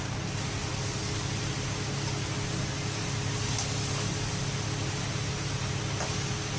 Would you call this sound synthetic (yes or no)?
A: no